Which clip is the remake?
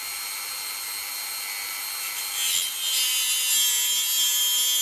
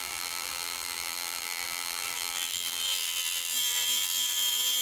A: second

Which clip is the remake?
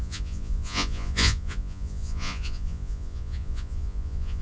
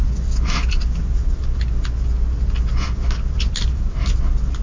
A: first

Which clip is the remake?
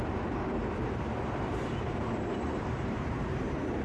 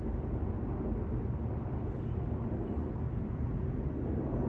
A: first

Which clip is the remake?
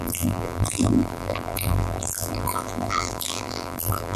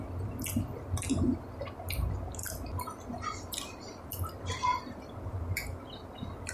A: first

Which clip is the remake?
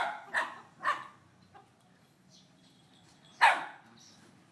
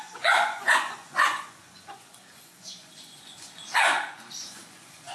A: second